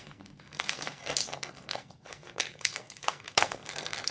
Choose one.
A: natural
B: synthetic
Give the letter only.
B